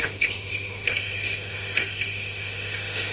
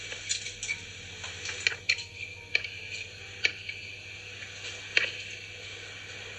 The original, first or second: second